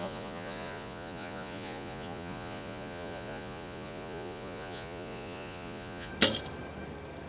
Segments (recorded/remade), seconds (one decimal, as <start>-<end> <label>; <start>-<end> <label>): 0.0-6.1 remade; 6.1-7.3 recorded